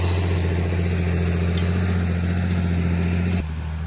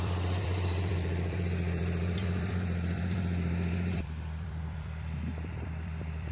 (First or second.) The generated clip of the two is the second